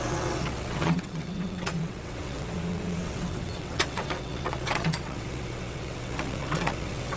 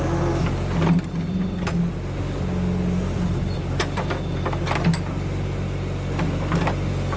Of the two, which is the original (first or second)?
second